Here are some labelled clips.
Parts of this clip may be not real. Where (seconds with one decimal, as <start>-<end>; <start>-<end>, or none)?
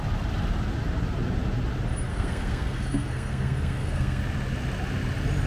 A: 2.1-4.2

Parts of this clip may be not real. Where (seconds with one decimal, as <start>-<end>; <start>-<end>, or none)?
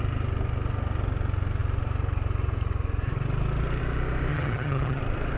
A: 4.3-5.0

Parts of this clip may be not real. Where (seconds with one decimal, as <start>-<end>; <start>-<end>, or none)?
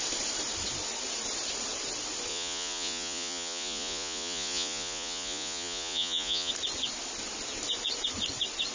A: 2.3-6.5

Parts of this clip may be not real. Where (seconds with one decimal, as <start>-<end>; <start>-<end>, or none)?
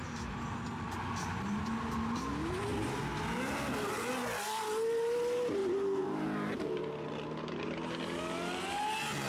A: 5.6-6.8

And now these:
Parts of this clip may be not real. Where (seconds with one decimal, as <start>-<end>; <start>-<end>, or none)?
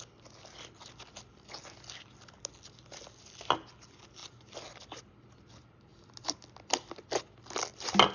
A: none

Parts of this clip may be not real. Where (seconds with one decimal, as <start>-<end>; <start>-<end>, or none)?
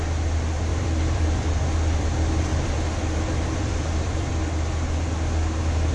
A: 0.7-1.6; 2.5-4.3